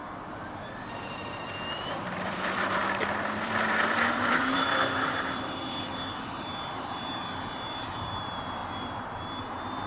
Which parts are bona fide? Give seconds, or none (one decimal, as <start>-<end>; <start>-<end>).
0.0-1.7; 2.8-3.3; 8.6-9.4